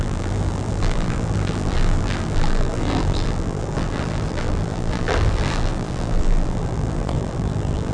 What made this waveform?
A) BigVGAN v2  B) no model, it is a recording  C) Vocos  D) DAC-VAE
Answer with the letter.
A